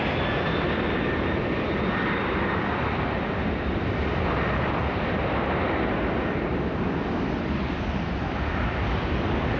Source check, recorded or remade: recorded